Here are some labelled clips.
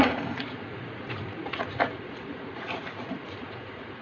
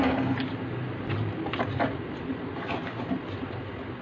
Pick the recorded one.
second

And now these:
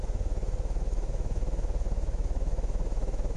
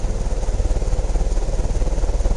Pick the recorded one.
second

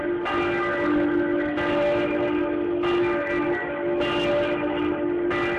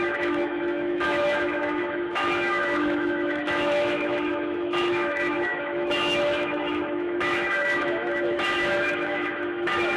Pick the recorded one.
first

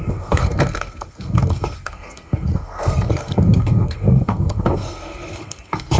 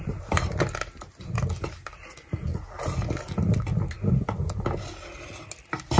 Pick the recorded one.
second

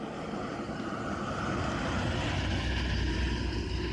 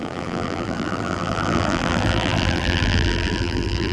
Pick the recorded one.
first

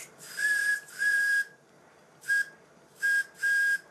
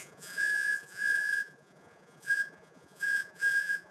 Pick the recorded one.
first